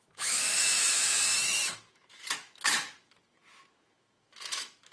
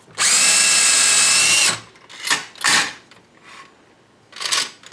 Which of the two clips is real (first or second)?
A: second